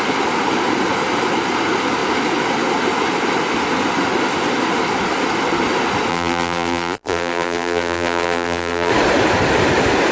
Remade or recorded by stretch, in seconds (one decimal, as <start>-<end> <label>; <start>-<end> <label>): 0.0-6.1 recorded; 6.1-8.9 remade; 8.9-10.1 recorded